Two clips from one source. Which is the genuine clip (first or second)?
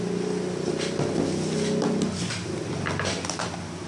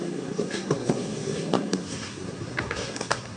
first